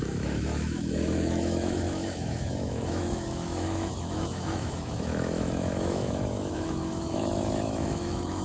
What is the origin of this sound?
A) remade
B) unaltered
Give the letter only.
A